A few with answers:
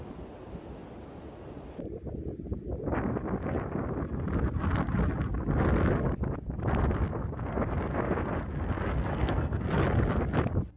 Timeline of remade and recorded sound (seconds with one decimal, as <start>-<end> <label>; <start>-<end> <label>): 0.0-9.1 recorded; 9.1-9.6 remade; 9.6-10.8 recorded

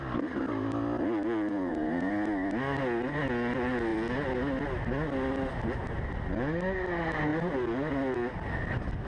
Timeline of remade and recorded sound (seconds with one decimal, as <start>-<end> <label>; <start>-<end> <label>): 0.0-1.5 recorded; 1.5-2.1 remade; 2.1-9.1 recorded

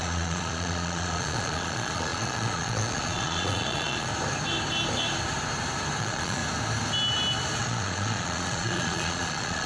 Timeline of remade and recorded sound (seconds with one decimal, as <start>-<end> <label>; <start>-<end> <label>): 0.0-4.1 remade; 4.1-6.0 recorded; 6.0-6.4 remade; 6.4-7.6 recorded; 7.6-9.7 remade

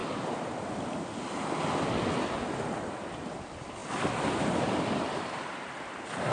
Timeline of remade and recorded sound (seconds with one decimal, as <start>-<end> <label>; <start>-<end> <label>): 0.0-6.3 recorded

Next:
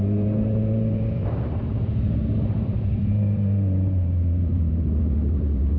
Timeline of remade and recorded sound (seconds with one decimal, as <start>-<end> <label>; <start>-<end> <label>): 0.0-5.8 remade

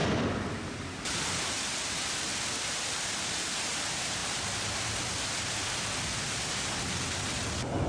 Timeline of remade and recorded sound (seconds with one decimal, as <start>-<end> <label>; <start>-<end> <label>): 0.0-7.9 recorded

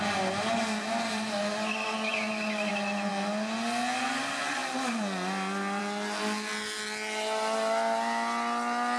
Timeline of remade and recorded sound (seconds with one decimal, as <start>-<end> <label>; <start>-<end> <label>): 0.0-9.0 recorded

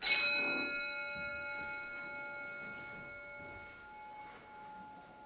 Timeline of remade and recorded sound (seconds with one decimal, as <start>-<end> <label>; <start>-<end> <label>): 0.0-5.3 recorded